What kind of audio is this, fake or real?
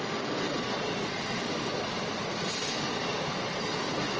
real